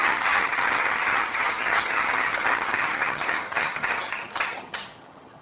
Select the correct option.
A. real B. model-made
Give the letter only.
B